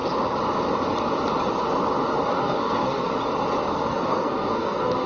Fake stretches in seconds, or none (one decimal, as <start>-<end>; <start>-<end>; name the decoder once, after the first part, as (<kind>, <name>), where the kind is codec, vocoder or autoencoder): 2.3-3.1 (codec, SNAC); 3.7-5.1